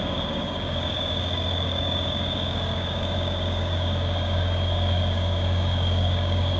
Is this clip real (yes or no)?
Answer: no